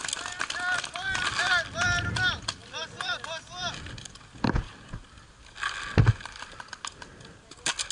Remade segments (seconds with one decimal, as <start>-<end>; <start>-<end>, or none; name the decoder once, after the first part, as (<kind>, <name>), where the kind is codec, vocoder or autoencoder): none